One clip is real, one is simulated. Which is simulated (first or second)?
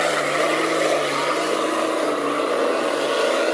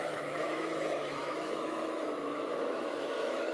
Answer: second